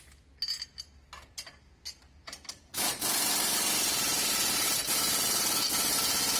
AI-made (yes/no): no